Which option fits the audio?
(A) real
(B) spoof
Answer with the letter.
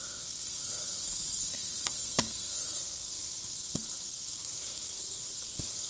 B